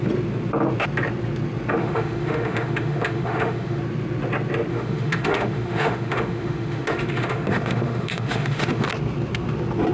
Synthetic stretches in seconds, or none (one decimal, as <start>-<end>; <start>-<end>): 1.8-3.8; 4.7-8.9